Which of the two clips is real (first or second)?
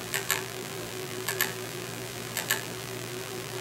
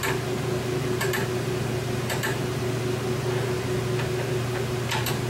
second